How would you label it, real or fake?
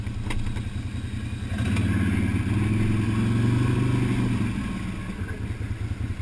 real